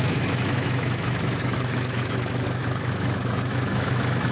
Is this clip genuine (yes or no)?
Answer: no